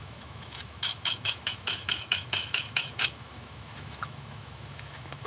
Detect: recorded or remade remade